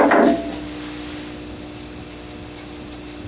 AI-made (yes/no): no